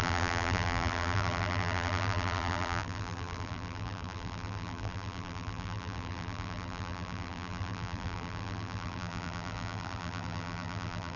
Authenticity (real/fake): fake